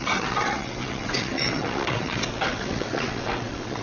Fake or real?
fake